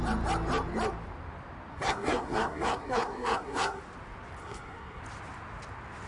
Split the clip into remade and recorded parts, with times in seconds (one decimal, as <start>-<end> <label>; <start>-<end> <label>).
0.0-1.7 recorded; 1.7-3.8 remade; 3.8-4.4 recorded; 4.4-5.0 remade; 5.0-6.1 recorded